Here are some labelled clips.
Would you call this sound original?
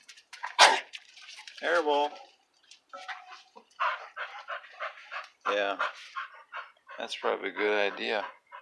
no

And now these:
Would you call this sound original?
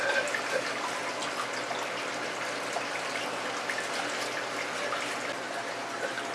yes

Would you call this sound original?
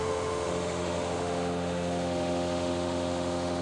no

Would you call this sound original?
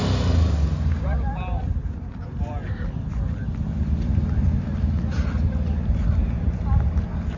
yes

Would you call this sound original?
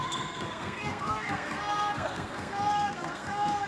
no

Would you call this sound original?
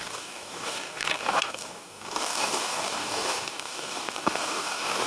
no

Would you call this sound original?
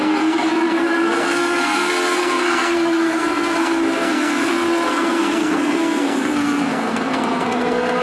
no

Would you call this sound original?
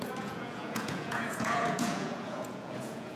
no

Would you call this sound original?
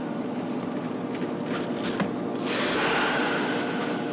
yes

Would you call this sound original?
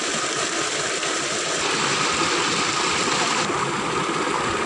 yes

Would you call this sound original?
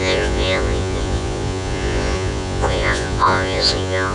no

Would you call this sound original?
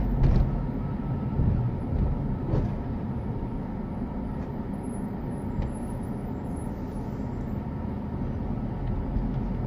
yes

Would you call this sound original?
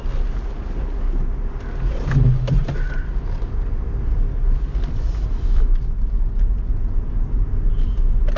yes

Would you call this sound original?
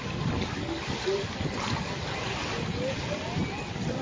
yes